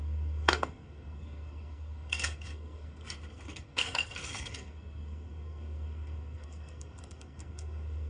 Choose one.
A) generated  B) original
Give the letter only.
A